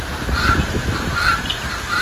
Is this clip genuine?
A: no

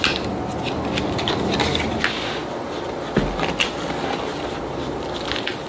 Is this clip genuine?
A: yes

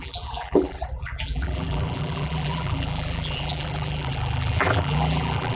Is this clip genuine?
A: no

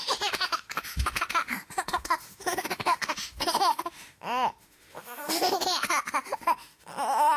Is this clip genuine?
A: no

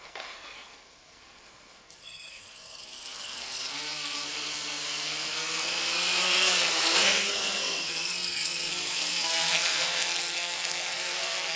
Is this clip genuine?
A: no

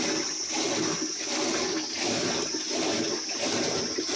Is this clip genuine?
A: yes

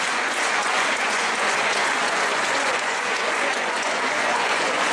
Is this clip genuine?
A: no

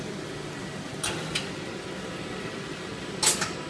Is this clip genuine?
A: yes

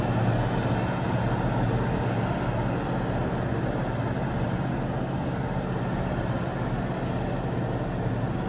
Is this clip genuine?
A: yes